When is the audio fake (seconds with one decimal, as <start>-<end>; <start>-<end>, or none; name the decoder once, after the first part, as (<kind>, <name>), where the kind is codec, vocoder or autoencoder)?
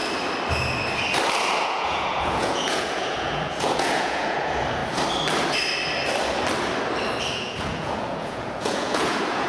1.6-4.8 (vocoder, Vocos); 7.3-9.5